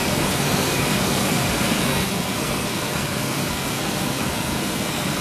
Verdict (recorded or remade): remade